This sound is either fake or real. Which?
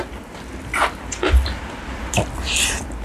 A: fake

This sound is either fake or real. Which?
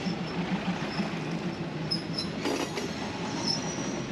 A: real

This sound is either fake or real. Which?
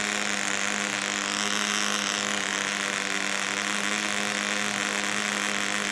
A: real